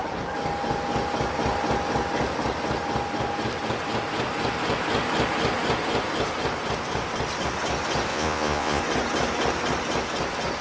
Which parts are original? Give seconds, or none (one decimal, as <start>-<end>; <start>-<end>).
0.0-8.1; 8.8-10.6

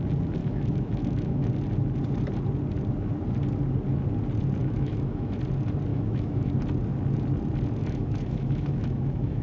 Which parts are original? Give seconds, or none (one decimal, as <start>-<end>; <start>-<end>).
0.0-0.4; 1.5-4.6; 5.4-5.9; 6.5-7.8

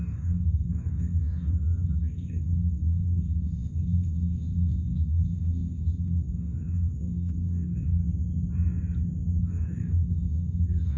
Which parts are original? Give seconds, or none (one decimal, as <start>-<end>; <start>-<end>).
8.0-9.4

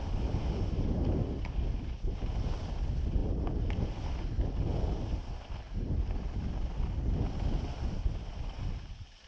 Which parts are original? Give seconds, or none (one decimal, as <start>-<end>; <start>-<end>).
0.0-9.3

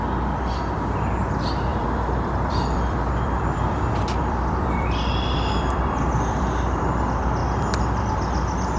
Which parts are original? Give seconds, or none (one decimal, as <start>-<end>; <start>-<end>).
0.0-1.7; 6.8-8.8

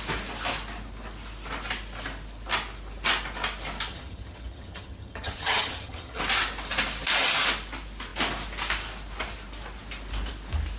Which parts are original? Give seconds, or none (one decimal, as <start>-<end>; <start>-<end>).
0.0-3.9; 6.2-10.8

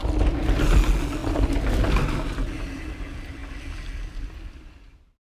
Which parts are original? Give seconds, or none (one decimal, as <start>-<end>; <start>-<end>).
0.0-5.2

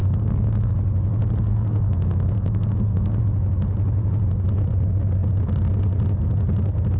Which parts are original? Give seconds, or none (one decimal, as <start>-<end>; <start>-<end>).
0.7-1.5; 3.2-7.0